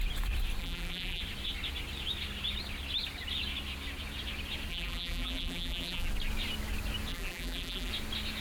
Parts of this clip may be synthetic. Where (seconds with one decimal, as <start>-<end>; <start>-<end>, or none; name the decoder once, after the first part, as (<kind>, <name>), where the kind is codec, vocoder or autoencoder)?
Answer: 0.6-1.2 (vocoder, BigVGAN v2); 4.7-6.1; 7.1-7.9